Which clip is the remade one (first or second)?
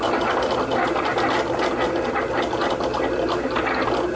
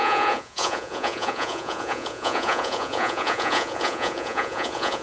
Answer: second